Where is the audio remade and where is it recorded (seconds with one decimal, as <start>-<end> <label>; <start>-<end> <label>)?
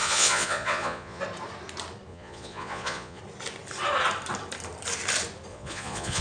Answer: 0.0-1.2 remade; 1.2-2.1 recorded; 2.1-3.2 remade; 3.2-5.5 recorded; 5.5-6.2 remade